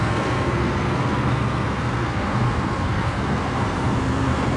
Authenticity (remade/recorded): remade